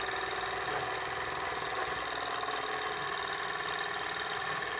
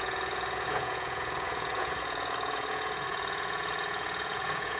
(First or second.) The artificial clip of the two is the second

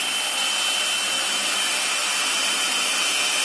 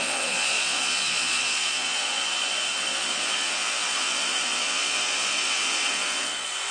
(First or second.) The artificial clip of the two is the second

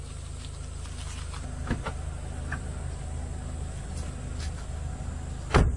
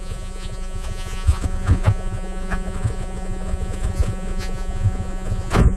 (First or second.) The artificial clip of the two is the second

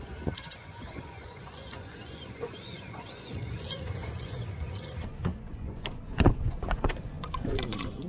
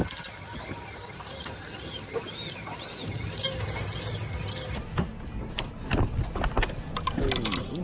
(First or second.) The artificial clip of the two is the first